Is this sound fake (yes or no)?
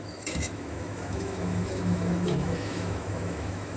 yes